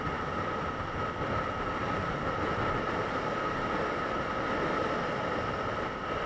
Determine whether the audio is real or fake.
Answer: real